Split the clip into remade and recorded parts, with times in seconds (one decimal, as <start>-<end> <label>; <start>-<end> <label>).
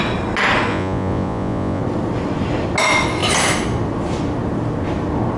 0.0-0.7 recorded; 0.7-1.8 remade; 1.8-5.4 recorded